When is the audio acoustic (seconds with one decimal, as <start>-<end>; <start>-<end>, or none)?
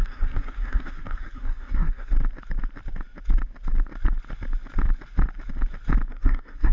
2.1-6.1